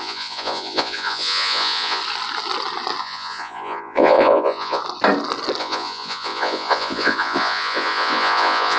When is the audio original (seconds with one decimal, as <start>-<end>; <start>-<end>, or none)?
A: 2.0-3.0; 4.8-5.6